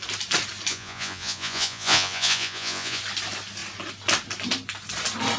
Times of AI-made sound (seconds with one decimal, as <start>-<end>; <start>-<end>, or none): 0.7-3.0